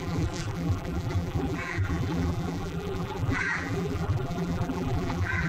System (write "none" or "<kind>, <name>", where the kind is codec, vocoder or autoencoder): vocoder, BigVGAN v2